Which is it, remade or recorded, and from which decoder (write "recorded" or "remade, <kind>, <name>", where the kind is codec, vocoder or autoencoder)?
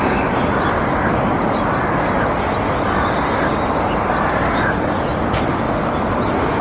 recorded